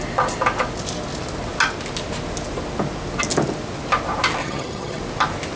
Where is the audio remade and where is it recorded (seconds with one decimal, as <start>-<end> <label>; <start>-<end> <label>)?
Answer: 0.0-4.4 recorded; 4.4-5.0 remade; 5.0-5.6 recorded